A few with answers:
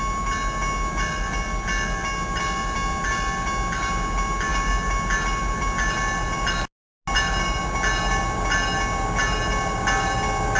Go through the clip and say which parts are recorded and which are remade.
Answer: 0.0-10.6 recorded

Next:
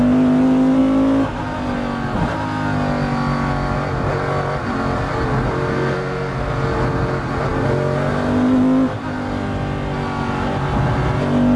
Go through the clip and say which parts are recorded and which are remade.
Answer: 0.0-5.7 recorded; 5.7-6.5 remade; 6.5-11.6 recorded

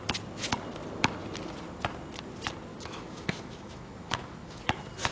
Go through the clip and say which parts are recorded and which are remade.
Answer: 0.0-2.7 recorded; 2.7-4.6 remade; 4.6-5.1 recorded

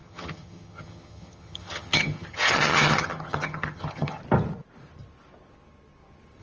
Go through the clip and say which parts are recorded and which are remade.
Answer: 0.0-4.2 remade; 4.2-6.4 recorded